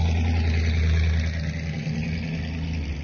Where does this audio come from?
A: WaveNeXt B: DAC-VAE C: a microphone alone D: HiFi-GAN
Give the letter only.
C